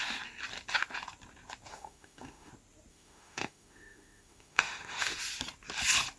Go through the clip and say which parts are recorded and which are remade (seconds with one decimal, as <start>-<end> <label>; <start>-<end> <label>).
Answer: 0.0-1.7 recorded; 1.7-2.5 remade; 2.5-2.9 recorded; 2.9-5.2 remade; 5.2-6.2 recorded